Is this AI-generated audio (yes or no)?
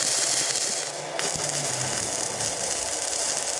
no